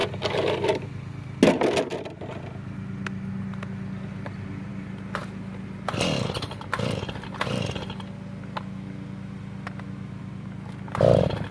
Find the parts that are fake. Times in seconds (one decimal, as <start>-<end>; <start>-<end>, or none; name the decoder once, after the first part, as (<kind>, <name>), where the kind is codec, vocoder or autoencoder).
none